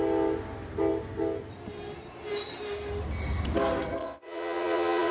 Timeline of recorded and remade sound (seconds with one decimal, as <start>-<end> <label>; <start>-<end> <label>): 0.0-4.0 recorded; 4.0-5.1 remade